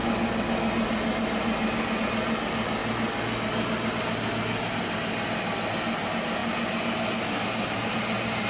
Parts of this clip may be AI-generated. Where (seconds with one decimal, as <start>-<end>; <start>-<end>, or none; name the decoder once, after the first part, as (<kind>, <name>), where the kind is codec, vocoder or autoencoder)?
none